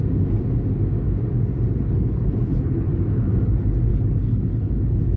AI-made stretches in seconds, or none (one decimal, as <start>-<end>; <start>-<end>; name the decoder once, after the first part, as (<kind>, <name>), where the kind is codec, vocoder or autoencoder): 1.7-2.9 (codec, HILCodec); 3.9-4.7